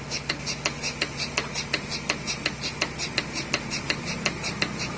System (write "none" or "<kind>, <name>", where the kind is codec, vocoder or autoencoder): none